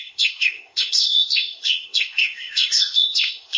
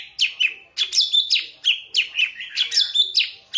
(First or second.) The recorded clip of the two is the second